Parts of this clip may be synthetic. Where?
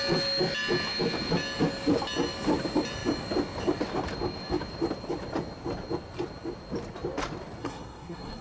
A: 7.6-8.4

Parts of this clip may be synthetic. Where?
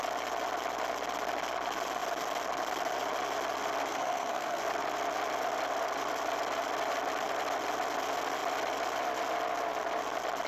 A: 3.9-4.6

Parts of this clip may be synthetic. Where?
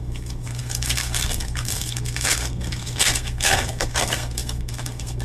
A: 0.0-5.2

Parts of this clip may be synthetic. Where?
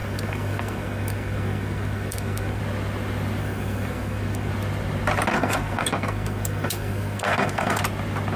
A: 0.0-2.6; 3.4-4.5; 5.3-7.8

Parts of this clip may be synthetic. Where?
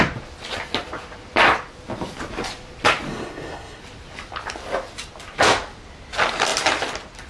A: 3.1-3.8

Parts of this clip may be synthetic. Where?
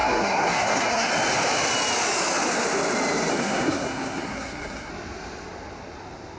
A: 0.0-1.1; 3.3-4.9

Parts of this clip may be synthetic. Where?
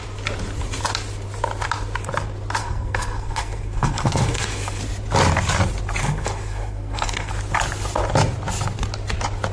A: 2.6-4.8; 6.0-7.3